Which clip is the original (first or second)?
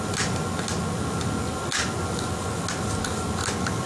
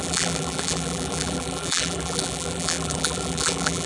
first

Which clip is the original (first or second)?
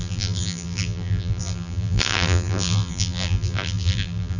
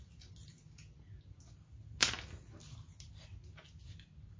second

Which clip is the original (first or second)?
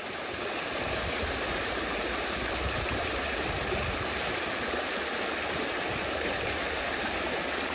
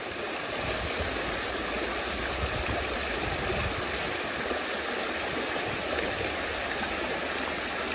second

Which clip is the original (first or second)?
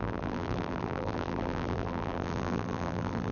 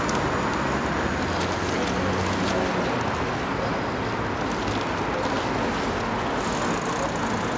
second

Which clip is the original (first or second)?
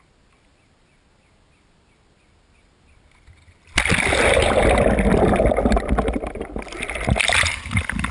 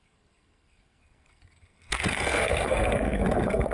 first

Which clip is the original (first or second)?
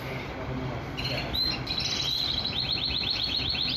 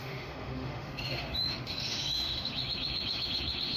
first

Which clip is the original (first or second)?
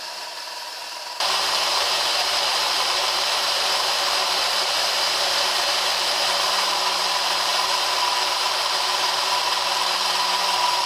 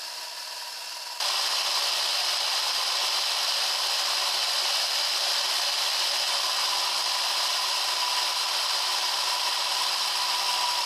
second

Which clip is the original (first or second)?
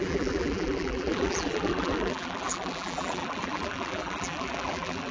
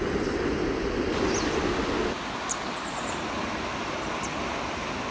second